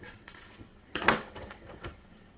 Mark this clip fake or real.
fake